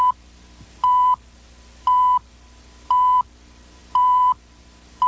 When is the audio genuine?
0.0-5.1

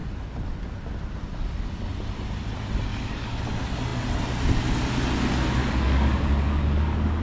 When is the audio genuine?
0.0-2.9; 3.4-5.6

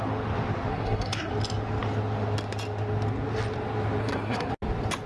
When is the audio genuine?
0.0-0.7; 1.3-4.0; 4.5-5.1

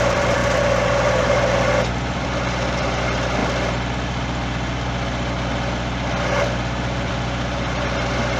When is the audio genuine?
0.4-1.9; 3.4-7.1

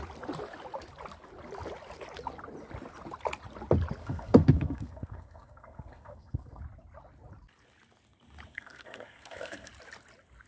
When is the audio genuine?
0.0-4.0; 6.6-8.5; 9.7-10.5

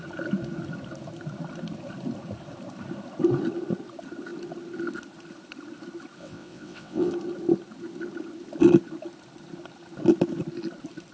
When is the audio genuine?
0.0-6.2; 7.1-11.1

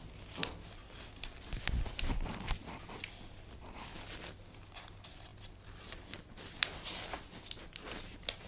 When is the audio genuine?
0.0-8.5

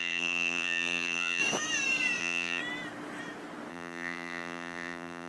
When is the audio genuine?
1.4-2.2; 2.6-3.7